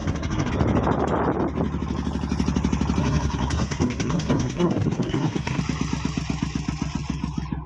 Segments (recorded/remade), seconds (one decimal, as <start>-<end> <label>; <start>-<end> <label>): 0.0-0.5 remade; 0.5-3.0 recorded; 3.0-5.6 remade; 5.6-7.7 recorded